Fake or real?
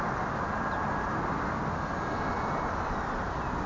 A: real